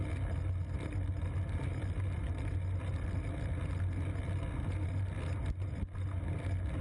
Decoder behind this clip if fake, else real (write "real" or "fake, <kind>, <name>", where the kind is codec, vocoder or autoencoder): real